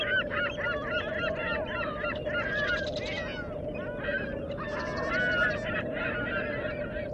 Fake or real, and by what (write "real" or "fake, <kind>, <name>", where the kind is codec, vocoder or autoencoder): real